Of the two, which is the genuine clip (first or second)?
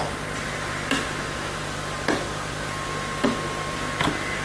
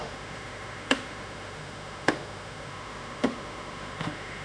first